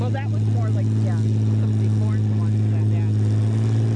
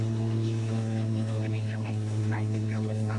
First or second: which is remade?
second